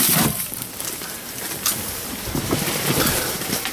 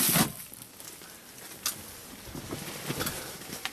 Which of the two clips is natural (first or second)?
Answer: second